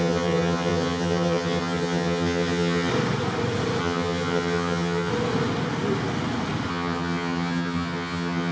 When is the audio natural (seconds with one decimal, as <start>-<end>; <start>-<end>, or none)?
2.9-3.8; 5.1-6.7